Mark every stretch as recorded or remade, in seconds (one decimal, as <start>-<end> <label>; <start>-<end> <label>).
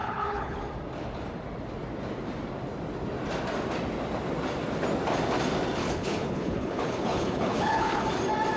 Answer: 0.0-0.6 remade; 0.6-5.8 recorded; 5.8-8.0 remade; 8.0-8.6 recorded